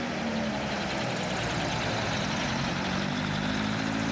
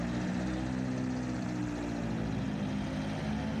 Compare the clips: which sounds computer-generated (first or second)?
first